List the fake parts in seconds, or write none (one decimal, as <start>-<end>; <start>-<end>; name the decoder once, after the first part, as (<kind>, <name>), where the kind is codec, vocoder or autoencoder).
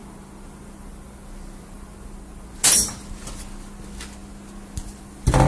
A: none